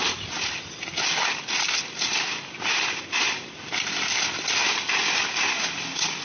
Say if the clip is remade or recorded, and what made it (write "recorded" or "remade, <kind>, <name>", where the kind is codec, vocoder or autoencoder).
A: recorded